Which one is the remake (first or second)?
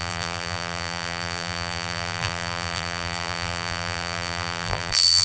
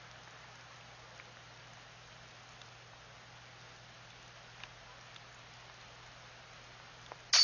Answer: first